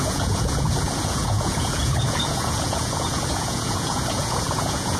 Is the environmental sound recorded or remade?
remade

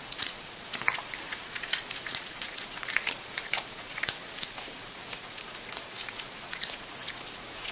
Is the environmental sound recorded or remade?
remade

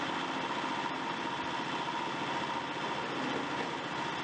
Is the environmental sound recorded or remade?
recorded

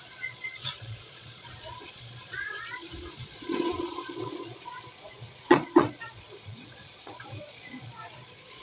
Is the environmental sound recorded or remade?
remade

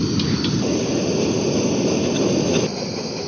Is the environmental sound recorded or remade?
recorded